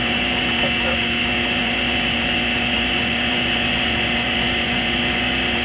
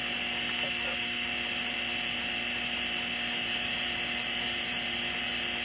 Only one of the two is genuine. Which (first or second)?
second